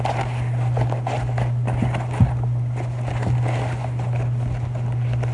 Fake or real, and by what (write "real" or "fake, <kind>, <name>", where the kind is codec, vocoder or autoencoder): real